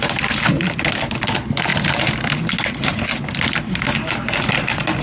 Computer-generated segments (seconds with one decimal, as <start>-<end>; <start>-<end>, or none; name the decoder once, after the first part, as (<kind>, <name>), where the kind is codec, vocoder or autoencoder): none